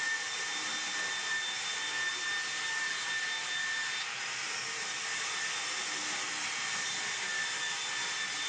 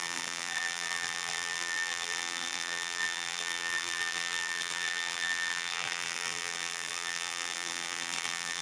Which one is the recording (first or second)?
first